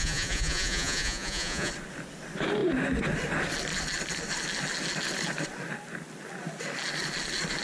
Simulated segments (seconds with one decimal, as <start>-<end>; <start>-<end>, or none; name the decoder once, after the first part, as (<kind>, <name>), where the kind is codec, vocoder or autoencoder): 0.0-1.7 (vocoder, Vocos)